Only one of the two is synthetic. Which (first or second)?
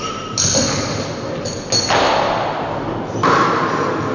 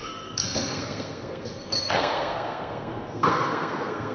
second